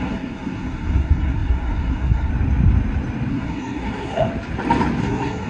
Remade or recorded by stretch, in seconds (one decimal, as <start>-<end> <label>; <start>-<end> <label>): 0.0-2.3 remade; 2.3-3.3 recorded; 3.3-4.3 remade; 4.3-5.0 recorded; 5.0-5.5 remade